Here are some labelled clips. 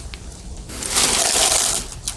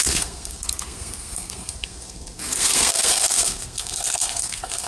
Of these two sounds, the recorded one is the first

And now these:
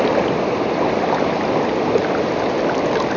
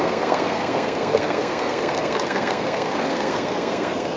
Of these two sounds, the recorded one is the first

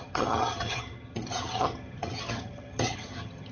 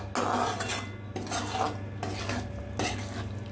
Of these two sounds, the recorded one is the second